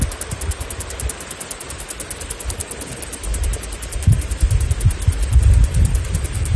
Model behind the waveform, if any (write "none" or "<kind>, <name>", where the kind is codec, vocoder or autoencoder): none